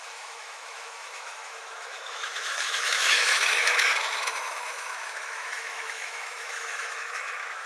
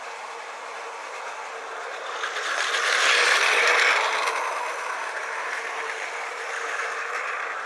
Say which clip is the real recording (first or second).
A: second